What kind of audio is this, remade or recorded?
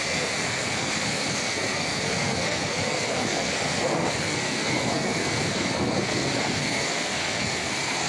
remade